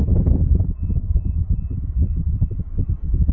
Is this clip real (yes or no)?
yes